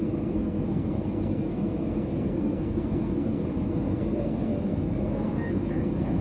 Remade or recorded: remade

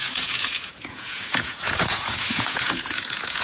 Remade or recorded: remade